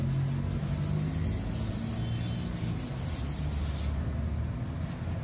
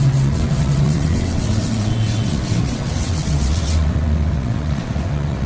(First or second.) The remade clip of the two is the second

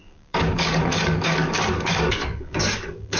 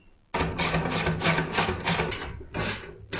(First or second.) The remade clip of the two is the first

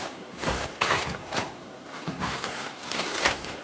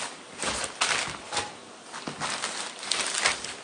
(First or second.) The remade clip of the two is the first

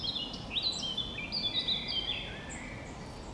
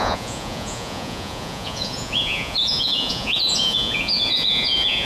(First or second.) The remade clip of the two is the second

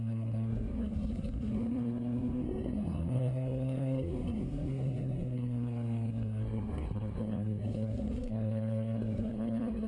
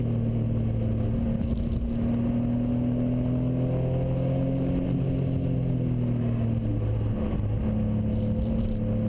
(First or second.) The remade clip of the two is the first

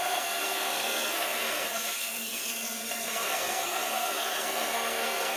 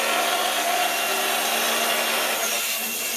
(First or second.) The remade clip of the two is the first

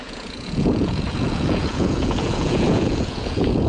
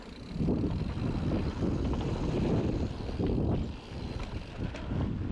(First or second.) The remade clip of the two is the first